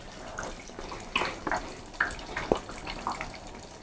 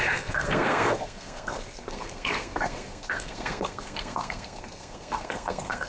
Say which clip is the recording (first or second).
first